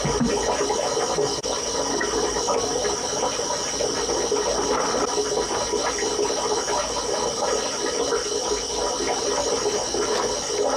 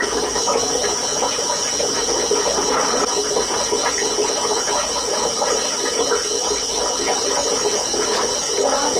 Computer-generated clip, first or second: second